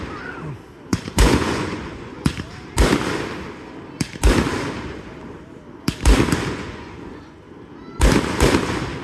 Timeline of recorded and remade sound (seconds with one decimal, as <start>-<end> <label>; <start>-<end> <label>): 0.0-0.9 recorded; 0.9-2.3 remade; 2.3-6.5 recorded; 6.5-7.4 remade; 7.4-9.0 recorded

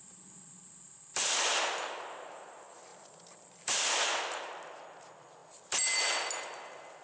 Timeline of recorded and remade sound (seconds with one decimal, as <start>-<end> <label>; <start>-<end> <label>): 0.0-7.0 recorded

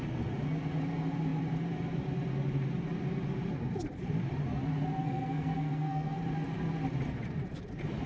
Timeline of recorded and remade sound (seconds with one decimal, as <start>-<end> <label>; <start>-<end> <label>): 0.0-5.0 recorded; 5.0-6.2 remade; 6.2-8.1 recorded

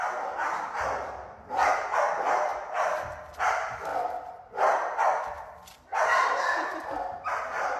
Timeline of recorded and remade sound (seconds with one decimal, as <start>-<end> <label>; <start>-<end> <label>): 0.0-5.9 remade; 5.9-7.1 recorded; 7.1-7.8 remade

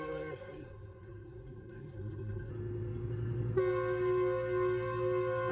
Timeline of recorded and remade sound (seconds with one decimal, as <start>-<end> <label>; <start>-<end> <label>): 0.0-2.5 remade; 2.5-5.5 recorded

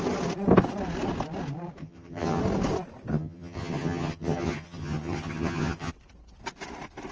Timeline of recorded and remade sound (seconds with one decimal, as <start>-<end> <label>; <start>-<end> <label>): 0.0-1.8 recorded; 1.8-2.4 remade; 2.4-3.1 recorded; 3.1-5.9 remade; 5.9-7.1 recorded

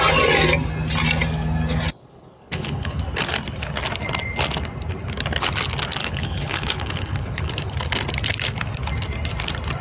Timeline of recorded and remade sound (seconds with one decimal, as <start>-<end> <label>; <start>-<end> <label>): 0.0-2.0 recorded; 2.0-3.0 remade; 3.0-6.0 recorded; 6.0-7.5 remade; 7.5-9.8 recorded